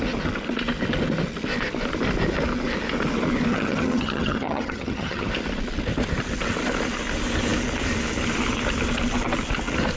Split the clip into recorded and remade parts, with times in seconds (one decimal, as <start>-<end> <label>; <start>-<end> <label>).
0.0-3.5 recorded; 3.5-5.3 remade; 5.3-10.0 recorded